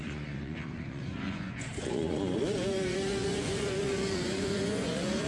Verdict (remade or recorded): remade